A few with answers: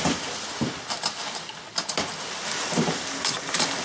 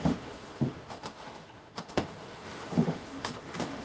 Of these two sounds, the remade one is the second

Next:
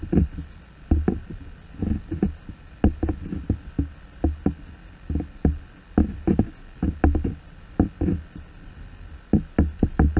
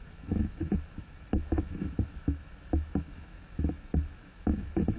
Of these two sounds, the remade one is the second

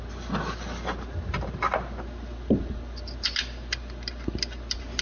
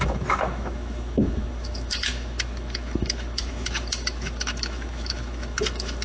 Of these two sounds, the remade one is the second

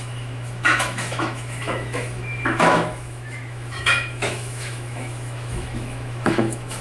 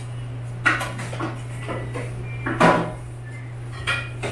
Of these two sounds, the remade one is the first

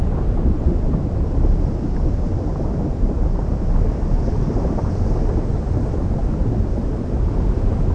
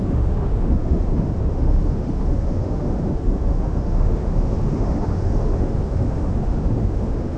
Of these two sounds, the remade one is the second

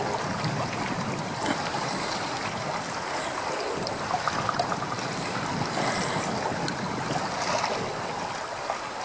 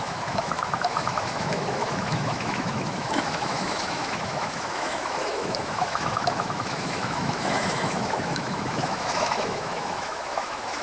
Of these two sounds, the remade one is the second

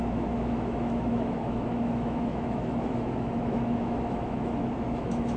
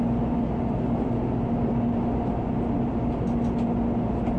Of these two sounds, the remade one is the first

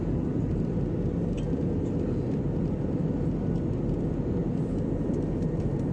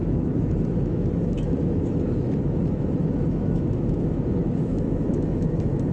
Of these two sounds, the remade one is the second